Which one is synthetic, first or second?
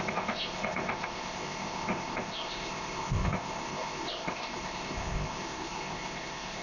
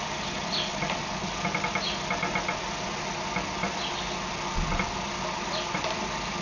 first